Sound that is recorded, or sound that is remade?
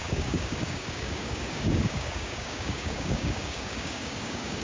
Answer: remade